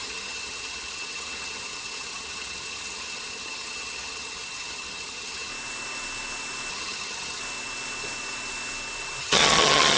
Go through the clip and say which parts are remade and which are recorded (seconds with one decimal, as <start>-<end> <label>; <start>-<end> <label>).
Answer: 0.0-5.5 remade; 5.5-6.7 recorded; 6.7-7.4 remade; 7.4-9.2 recorded; 9.2-10.0 remade